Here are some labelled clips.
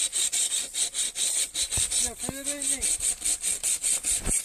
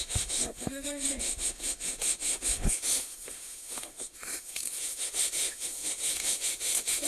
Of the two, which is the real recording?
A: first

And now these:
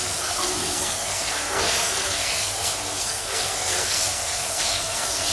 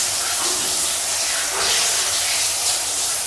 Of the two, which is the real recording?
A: second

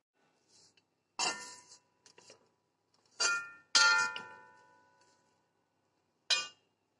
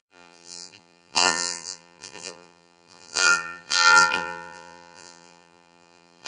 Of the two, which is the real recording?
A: first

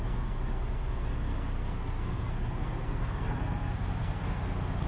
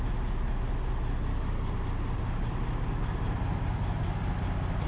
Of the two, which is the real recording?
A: second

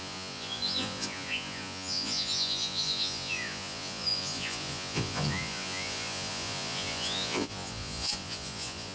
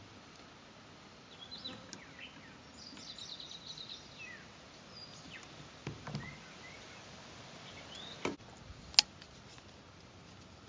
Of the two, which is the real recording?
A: second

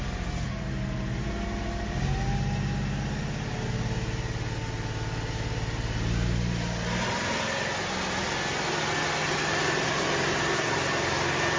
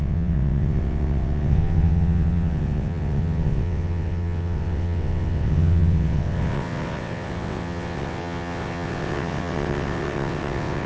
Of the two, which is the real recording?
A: first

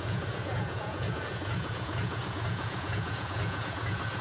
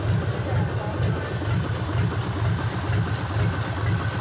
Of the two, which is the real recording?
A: second